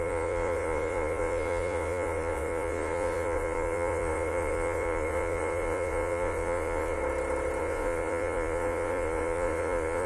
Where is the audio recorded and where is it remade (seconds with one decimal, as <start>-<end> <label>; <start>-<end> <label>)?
0.0-7.0 remade; 7.0-7.6 recorded; 7.6-10.1 remade